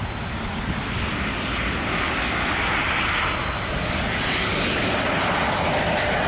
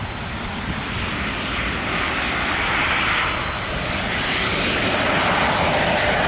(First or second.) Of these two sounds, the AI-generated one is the second